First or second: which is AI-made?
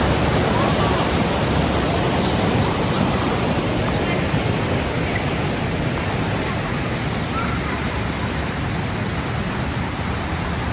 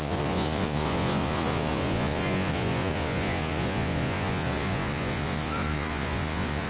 second